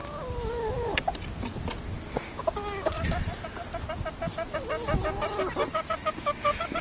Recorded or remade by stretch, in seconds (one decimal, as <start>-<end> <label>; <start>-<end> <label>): 0.0-6.8 recorded